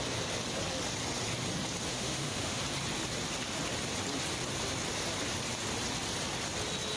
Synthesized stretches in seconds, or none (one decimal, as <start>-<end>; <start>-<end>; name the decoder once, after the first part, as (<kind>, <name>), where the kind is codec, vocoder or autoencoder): 1.9-2.6 (autoencoder, DAC-VAE)